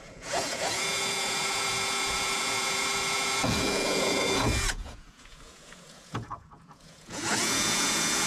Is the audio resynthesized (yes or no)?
yes